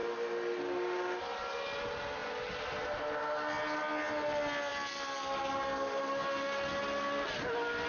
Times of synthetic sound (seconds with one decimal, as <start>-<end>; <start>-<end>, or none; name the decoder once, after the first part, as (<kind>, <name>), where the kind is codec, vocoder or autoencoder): none